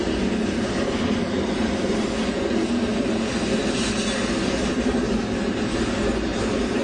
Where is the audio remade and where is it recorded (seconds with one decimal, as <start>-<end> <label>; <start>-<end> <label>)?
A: 0.0-6.8 recorded